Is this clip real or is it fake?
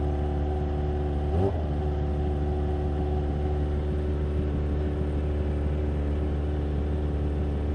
real